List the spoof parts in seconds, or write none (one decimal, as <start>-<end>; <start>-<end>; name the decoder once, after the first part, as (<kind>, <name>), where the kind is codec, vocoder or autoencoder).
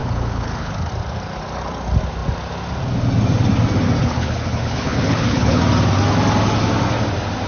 0.0-0.9 (codec, HILCodec); 4.0-5.6